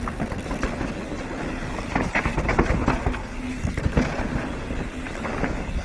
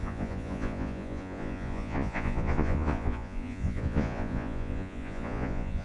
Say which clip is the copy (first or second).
second